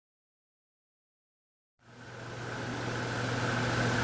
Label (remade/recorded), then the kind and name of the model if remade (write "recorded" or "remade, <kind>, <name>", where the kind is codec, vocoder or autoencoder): recorded